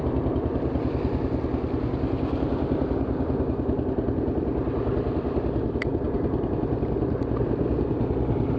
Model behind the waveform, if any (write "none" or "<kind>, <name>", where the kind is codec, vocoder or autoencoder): none